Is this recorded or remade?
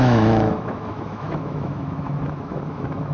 remade